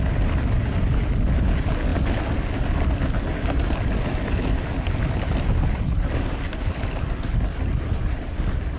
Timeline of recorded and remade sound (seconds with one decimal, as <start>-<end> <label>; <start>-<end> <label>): 0.0-8.8 recorded